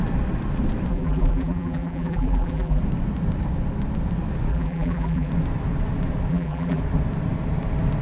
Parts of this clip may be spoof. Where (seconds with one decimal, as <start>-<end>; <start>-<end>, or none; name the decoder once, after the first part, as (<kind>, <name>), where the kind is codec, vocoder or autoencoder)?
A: 0.9-2.8 (vocoder, BigVGAN v2); 4.5-5.3; 6.3-6.8